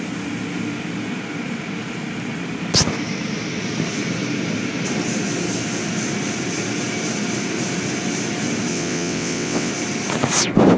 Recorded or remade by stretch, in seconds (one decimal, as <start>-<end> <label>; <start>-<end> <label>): 0.0-8.7 recorded; 8.7-9.7 remade; 9.7-10.8 recorded